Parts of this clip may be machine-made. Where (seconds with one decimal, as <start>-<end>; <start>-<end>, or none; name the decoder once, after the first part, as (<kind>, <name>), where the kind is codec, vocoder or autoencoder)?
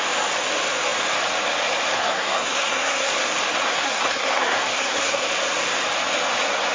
1.9-3.1 (codec, SNAC); 3.6-5.3